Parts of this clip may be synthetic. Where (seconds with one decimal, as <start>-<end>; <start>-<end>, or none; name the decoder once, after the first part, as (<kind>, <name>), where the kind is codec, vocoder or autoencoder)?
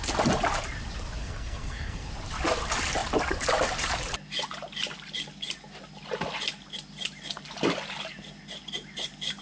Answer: 1.2-2.1 (codec, SNAC)